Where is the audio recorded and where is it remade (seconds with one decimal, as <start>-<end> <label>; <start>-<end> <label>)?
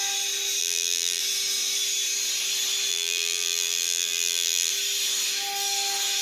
0.0-0.6 recorded; 0.6-1.2 remade; 1.2-2.9 recorded; 2.9-4.7 remade; 4.7-6.2 recorded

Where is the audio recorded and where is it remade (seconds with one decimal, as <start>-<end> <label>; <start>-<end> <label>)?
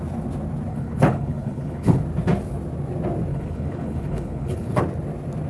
0.0-0.7 recorded; 0.7-2.0 remade; 2.0-3.3 recorded; 3.3-4.8 remade; 4.8-5.5 recorded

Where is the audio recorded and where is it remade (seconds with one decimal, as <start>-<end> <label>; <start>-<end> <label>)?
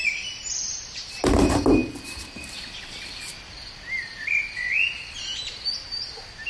0.0-6.5 recorded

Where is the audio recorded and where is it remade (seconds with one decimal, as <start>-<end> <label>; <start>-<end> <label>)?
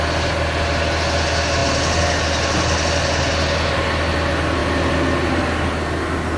0.0-6.4 recorded